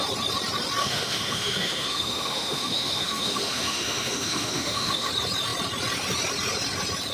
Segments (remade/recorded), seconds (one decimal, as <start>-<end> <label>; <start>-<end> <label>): 0.0-0.8 recorded; 0.8-5.1 remade; 5.1-7.1 recorded